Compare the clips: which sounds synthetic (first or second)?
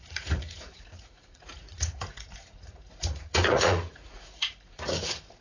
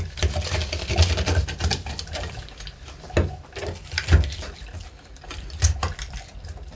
first